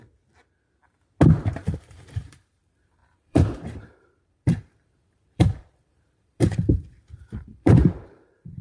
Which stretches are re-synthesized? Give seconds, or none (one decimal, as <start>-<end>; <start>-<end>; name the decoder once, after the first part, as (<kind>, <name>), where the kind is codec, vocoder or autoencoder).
1.6-8.6 (vocoder, BigVGAN v2)